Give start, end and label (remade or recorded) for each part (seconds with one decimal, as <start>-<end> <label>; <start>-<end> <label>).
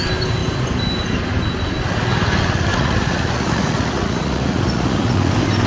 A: 0.0-2.7 recorded; 2.7-5.3 remade; 5.3-5.7 recorded